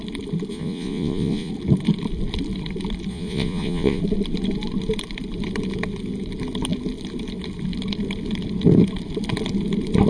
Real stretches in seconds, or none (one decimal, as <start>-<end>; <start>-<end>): 0.0-0.5; 1.5-3.1; 4.0-10.1